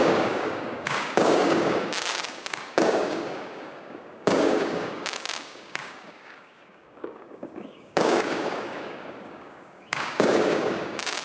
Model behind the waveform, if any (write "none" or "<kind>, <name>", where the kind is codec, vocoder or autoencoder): codec, DAC